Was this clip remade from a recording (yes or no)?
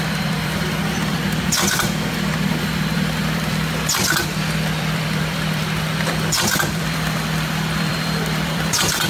yes